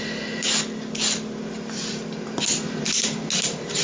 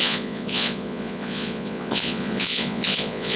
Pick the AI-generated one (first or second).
second